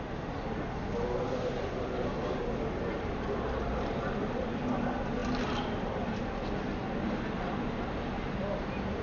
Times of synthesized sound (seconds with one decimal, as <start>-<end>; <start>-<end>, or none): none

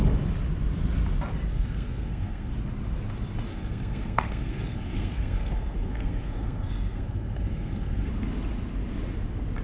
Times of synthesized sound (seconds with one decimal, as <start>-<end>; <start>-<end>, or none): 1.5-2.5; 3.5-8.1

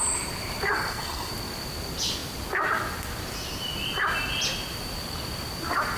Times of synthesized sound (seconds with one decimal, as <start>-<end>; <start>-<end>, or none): 0.7-1.3